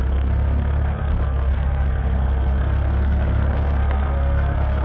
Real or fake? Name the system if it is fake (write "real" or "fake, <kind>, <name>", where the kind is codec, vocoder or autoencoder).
fake, codec, SNAC